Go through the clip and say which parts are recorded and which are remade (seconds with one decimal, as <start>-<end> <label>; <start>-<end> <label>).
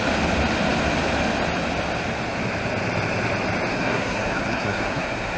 0.0-3.7 recorded; 3.7-5.4 remade